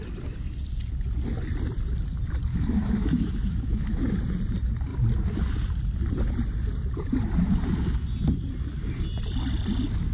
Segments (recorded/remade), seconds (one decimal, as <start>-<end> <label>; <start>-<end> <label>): 0.0-2.5 recorded; 2.5-4.2 remade; 4.2-10.1 recorded